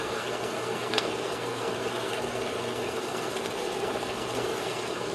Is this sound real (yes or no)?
no